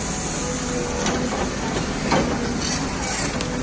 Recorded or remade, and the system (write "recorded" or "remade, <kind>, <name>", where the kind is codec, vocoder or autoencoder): recorded